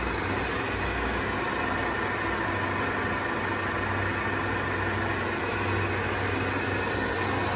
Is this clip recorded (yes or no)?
yes